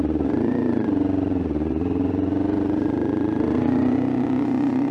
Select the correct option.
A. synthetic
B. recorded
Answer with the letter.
A